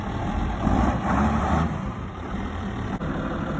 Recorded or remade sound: remade